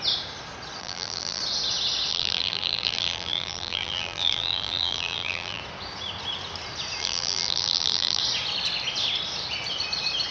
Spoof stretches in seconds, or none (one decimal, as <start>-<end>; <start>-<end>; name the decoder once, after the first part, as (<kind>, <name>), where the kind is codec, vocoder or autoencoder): 0.8-1.4 (vocoder, BigVGAN v2); 2.1-5.6; 7.0-8.2